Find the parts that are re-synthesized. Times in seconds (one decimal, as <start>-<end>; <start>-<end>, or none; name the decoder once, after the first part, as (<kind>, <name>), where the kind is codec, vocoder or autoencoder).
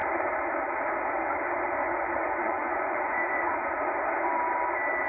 1.8-3.9 (vocoder, Vocos)